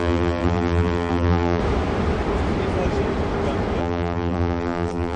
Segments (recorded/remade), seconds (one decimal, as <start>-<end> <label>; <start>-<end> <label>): 0.0-1.6 remade; 1.6-3.8 recorded; 3.8-5.2 remade